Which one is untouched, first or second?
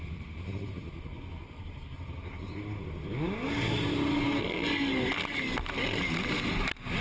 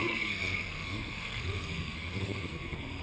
first